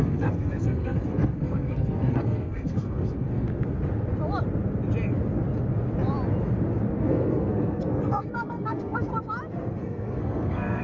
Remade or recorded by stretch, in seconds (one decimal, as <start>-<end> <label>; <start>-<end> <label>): 0.0-3.5 remade; 3.5-7.0 recorded; 7.0-9.1 remade; 9.1-9.8 recorded; 9.8-10.8 remade